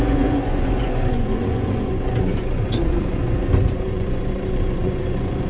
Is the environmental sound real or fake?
fake